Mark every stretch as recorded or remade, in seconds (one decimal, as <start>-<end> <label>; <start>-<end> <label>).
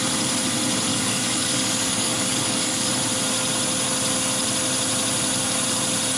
0.0-0.9 recorded; 0.9-2.9 remade; 2.9-6.2 recorded